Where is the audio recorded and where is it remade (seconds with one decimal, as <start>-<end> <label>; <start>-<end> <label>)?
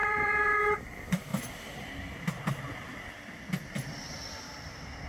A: 0.0-0.5 remade; 0.5-5.1 recorded